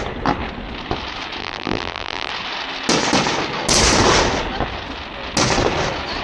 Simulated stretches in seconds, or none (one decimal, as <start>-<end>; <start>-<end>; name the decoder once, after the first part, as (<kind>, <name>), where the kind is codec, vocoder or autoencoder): 1.4-2.3 (vocoder, BigVGAN v2)